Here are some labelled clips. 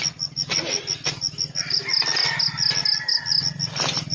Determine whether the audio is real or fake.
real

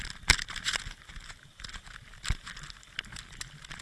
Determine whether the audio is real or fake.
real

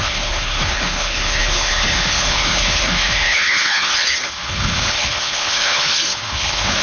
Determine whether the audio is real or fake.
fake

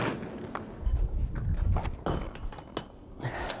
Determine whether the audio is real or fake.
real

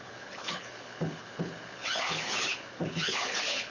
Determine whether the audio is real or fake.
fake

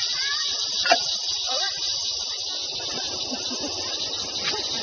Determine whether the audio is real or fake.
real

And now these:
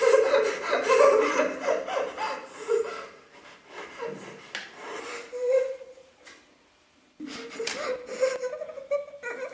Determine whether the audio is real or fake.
real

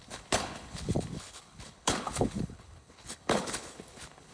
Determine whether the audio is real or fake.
fake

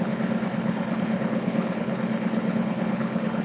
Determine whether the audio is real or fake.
fake